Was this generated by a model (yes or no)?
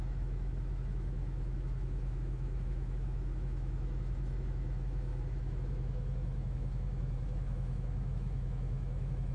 yes